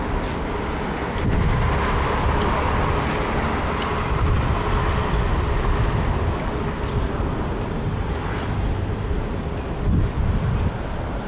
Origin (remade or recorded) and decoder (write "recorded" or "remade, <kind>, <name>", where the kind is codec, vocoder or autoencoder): recorded